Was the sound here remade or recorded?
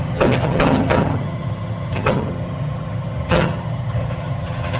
remade